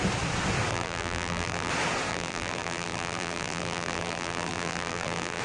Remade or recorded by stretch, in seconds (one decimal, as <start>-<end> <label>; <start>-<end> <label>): 0.0-0.7 recorded; 0.7-1.7 remade; 1.7-2.1 recorded; 2.1-5.4 remade